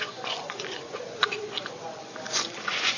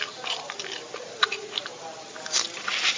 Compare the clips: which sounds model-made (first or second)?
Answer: first